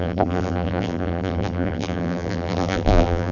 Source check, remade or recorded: remade